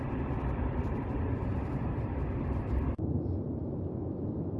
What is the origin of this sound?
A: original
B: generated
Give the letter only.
B